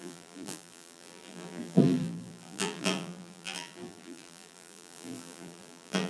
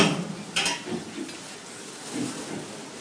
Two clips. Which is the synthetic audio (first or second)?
first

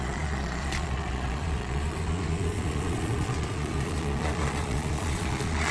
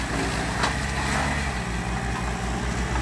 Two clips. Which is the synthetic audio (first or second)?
first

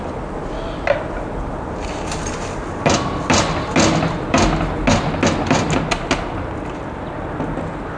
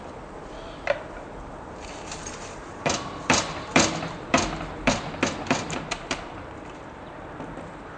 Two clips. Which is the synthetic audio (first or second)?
second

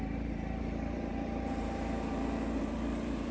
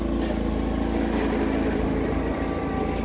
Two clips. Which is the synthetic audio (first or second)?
first